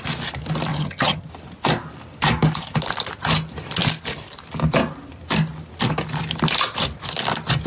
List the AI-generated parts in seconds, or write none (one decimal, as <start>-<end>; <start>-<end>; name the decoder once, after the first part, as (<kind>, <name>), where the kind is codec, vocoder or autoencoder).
0.7-1.3 (vocoder, HiFi-GAN)